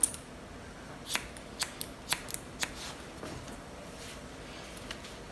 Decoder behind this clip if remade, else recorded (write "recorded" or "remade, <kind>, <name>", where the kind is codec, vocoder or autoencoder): recorded